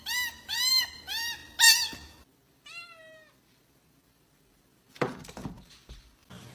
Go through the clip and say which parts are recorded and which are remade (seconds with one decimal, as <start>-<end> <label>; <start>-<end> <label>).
0.0-6.5 remade